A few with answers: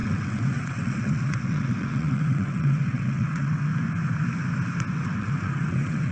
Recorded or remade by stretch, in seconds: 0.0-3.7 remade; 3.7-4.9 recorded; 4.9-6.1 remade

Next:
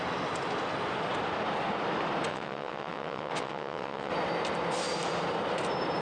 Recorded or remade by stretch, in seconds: 0.0-2.3 recorded; 2.3-4.1 remade; 4.1-6.0 recorded

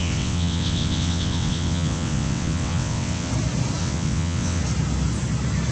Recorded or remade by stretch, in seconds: 0.0-3.3 remade; 3.3-3.8 recorded; 3.8-4.6 remade; 4.6-5.7 recorded

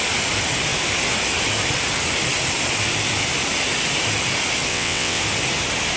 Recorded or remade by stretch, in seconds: 0.0-4.7 recorded; 4.7-5.2 remade; 5.2-6.0 recorded